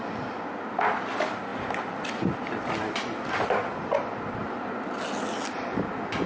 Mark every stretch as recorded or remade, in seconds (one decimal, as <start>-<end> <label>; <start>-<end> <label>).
0.0-6.3 recorded